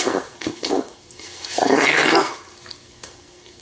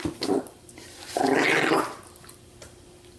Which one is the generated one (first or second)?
first